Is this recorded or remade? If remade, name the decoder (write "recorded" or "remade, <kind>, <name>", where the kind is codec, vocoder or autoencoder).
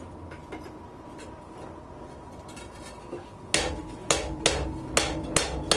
recorded